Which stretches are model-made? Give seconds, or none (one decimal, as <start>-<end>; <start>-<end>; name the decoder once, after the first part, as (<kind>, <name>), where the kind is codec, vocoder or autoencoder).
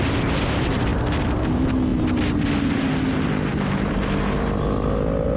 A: none